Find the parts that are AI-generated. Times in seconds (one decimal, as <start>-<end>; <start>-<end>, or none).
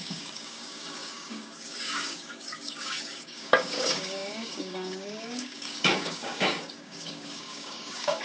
0.0-8.2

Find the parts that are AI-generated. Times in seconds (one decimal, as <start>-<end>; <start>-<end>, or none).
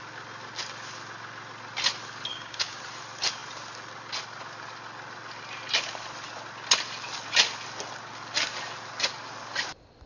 2.3-2.8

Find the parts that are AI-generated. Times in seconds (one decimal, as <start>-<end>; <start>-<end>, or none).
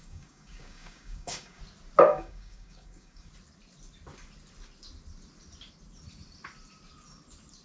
0.0-1.6; 2.1-3.3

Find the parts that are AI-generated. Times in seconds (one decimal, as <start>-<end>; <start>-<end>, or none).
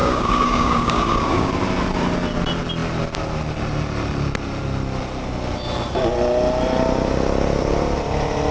0.0-1.5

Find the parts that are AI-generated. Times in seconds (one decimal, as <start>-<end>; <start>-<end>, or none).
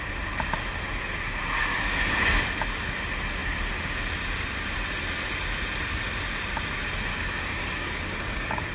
1.7-2.4; 7.1-8.7